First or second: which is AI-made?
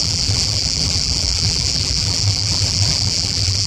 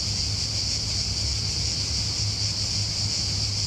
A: first